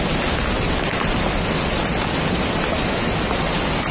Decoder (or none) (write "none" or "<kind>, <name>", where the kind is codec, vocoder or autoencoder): none